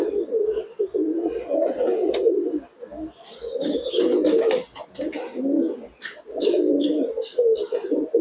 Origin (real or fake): real